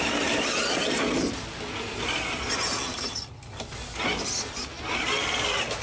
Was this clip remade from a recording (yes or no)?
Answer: no